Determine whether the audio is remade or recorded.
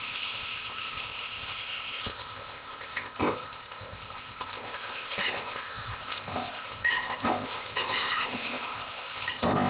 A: remade